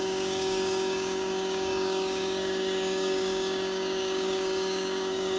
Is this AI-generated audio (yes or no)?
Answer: yes